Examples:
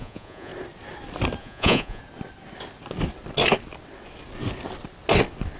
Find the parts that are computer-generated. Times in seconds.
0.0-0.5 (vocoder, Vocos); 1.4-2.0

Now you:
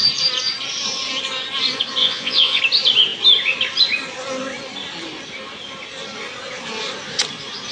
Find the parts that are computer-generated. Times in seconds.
2.0-2.6 (vocoder, Vocos)

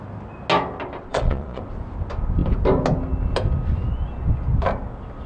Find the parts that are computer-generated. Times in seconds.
1.1-1.6 (vocoder, Vocos)

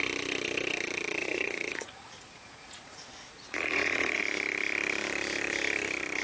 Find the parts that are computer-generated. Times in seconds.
1.2-4.2 (vocoder, Vocos)

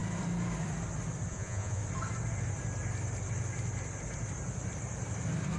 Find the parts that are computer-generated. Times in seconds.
1.3-1.8 (vocoder, Vocos)

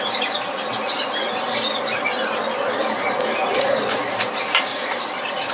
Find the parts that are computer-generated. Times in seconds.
3.4-4.1 (vocoder, Vocos); 4.7-5.5

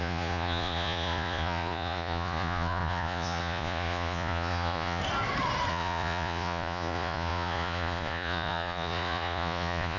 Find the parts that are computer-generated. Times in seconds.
0.0-5.0 (vocoder, Vocos); 5.7-10.0

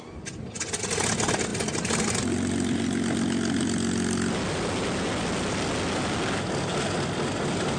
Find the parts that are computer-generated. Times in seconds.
none